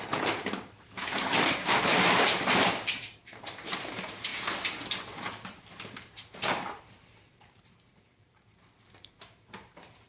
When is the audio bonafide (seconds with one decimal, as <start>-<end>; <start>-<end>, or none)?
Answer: 4.3-5.6

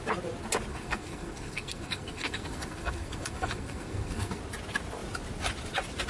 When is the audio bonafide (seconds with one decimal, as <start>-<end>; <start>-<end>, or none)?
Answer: 0.0-0.7; 4.4-6.1

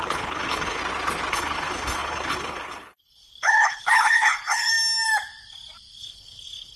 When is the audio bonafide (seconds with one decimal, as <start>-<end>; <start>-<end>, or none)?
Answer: 0.8-1.3; 4.7-6.0